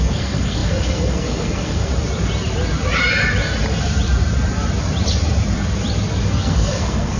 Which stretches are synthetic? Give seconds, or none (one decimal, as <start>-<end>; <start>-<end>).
0.0-1.9; 6.2-7.2